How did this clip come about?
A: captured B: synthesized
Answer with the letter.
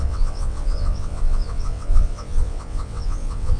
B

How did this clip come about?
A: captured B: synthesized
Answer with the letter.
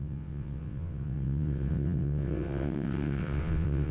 B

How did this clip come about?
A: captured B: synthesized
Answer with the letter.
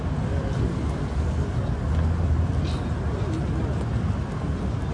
A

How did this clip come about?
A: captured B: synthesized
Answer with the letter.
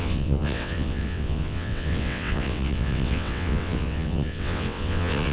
B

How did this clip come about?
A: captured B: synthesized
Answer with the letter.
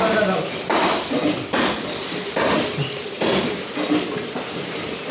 A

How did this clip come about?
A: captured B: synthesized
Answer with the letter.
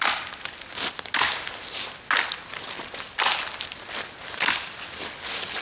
A